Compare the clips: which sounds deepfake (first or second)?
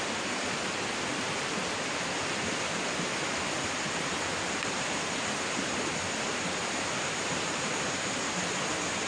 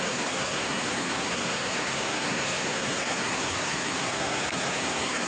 second